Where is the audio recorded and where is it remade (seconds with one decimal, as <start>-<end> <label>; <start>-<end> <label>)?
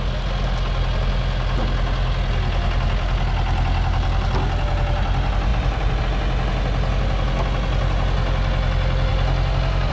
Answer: 0.0-5.5 recorded; 5.5-6.0 remade; 6.0-9.9 recorded